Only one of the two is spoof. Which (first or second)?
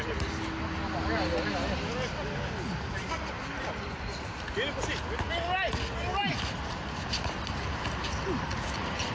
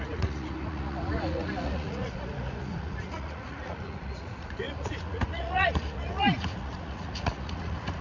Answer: second